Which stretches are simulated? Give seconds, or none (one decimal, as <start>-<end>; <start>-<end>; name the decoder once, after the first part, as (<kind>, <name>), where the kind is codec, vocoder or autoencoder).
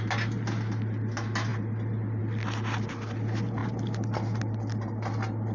none